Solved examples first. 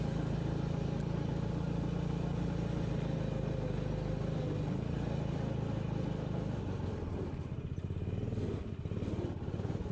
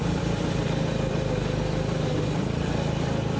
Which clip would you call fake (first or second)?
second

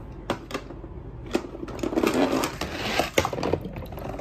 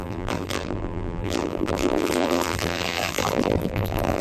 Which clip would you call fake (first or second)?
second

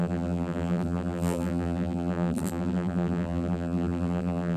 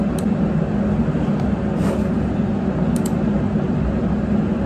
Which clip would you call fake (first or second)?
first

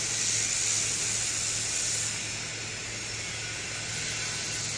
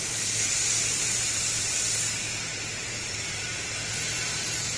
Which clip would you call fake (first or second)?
second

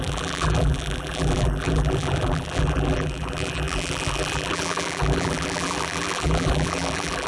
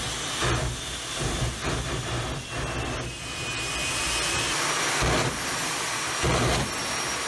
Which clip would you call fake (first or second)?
first